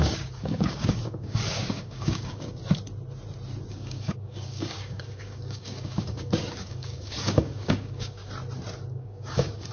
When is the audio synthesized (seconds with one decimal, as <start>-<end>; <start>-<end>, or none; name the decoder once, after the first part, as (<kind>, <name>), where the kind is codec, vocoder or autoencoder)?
0.0-2.6 (codec, DAC); 3.7-8.2; 8.9-9.7